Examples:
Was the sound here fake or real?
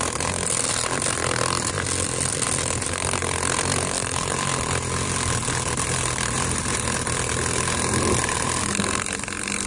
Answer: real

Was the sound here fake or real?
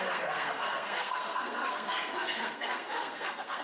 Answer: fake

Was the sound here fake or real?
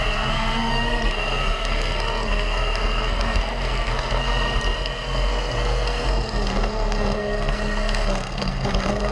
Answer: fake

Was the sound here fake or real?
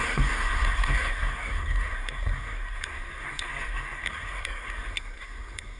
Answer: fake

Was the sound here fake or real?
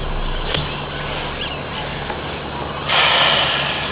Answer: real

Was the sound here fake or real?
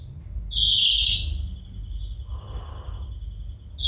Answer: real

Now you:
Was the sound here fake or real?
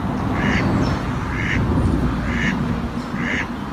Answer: real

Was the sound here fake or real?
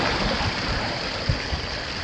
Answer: real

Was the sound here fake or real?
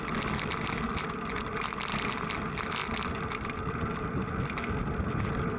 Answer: real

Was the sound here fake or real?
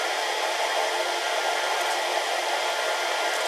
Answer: real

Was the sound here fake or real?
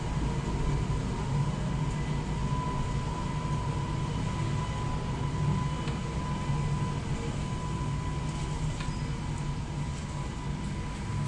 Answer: real